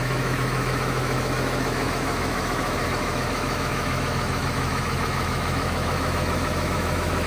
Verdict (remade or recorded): remade